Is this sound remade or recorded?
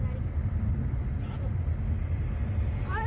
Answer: recorded